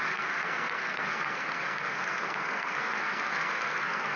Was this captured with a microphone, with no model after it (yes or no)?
no